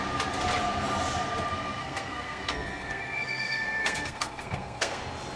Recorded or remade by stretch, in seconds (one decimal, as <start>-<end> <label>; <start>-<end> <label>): 0.0-1.8 recorded; 1.8-5.0 remade; 5.0-5.4 recorded